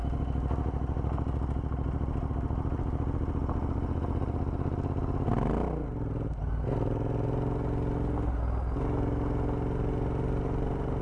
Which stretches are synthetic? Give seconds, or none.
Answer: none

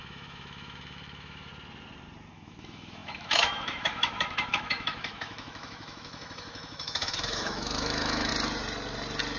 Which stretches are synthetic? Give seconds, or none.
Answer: 0.0-1.5 (autoencoder, DAC-VAE); 2.3-8.3

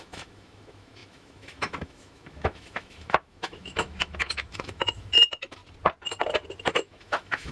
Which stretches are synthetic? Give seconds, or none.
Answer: 0.0-5.6 (autoencoder, DAC-VAE); 6.7-7.5